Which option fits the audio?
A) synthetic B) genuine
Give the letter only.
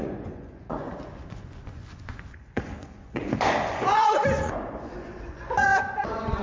A